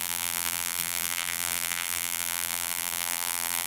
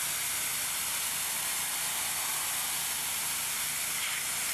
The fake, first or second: first